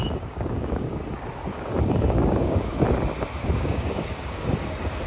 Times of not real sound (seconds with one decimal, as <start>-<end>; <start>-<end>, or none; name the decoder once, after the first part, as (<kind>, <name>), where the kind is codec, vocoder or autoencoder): 0.0-1.0 (codec, DAC); 1.5-2.8; 3.4-4.5